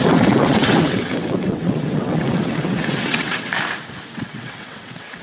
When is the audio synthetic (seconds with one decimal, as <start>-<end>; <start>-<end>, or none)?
0.0-3.5; 4.1-5.2